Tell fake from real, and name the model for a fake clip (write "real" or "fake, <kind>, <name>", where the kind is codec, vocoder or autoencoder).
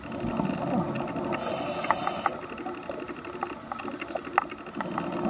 real